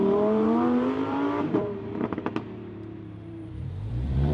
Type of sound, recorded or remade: remade